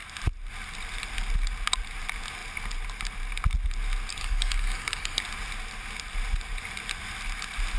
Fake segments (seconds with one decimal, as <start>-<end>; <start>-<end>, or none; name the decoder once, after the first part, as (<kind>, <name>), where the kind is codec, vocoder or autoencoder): 4.1-5.2 (codec, DAC)